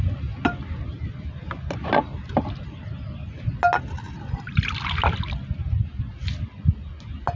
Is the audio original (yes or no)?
yes